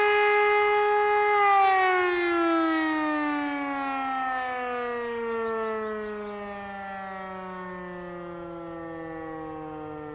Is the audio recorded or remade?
recorded